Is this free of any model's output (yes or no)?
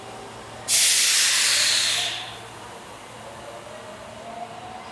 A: yes